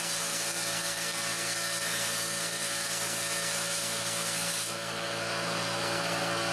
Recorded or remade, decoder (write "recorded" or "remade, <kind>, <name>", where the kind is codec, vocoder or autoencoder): remade, codec, SNAC